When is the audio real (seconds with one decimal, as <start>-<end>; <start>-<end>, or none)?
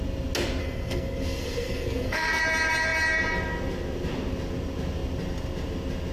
0.0-0.6; 2.4-6.1